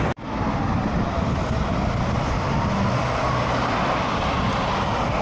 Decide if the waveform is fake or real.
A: real